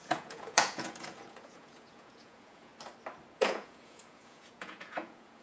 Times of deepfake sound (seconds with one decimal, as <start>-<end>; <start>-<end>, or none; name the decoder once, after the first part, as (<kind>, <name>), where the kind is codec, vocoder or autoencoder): 0.0-2.7 (vocoder, Vocos); 3.3-5.4